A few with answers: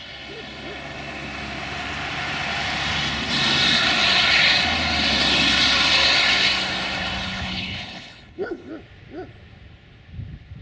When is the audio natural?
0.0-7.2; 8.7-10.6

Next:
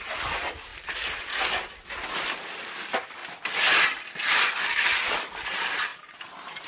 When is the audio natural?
0.0-6.7

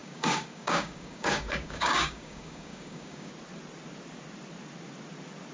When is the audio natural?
3.3-5.5

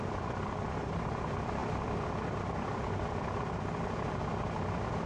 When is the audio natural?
0.0-5.1

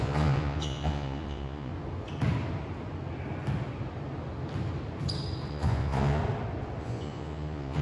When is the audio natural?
1.7-5.5; 6.2-6.8